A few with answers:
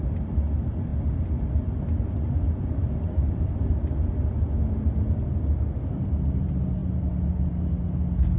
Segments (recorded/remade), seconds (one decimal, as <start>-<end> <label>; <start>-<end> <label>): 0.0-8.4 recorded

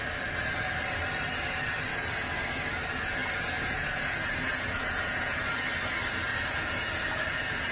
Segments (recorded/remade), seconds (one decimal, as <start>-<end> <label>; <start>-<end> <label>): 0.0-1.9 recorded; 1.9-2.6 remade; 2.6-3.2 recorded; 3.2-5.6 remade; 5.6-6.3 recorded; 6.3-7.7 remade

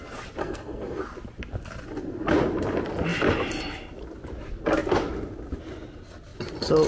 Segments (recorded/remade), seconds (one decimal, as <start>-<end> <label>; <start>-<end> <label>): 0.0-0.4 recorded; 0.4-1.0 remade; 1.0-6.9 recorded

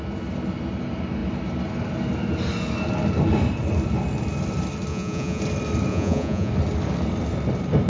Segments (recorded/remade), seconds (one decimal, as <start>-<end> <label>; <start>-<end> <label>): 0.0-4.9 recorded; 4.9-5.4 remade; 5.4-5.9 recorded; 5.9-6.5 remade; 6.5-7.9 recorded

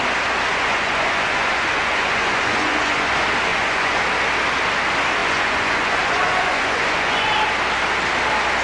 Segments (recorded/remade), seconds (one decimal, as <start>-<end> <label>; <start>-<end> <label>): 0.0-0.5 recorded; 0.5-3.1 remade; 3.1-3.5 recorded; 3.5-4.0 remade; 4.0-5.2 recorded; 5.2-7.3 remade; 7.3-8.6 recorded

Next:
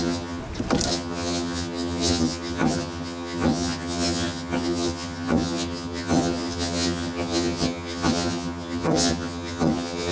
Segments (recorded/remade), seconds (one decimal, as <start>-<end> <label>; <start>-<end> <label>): 0.0-0.4 remade; 0.4-0.9 recorded; 0.9-10.1 remade

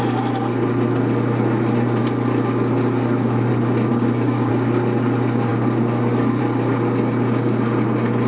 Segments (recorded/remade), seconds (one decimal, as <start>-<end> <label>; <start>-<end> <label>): 0.0-3.9 recorded; 3.9-4.5 remade; 4.5-8.3 recorded

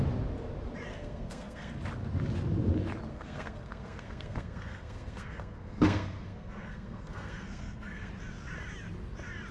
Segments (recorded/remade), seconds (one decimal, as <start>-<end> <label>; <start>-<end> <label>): 0.0-0.9 recorded; 0.9-1.7 remade; 1.7-3.1 recorded; 3.1-8.1 remade; 8.1-9.5 recorded